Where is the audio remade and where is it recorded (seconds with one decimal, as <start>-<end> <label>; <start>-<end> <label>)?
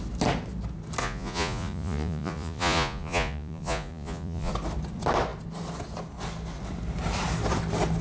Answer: 0.0-1.0 recorded; 1.0-4.5 remade; 4.5-8.0 recorded